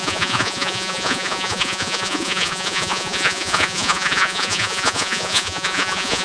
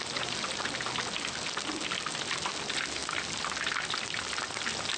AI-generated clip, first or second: first